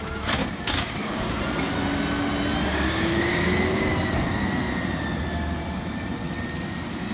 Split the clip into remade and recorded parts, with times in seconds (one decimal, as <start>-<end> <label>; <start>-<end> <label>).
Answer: 0.0-0.4 recorded; 0.4-1.4 remade; 1.4-2.7 recorded; 2.7-3.5 remade; 3.5-7.1 recorded